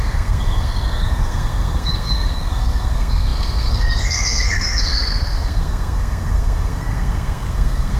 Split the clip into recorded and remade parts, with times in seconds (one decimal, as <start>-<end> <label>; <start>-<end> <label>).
0.0-8.0 remade